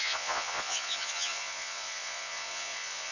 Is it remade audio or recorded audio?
remade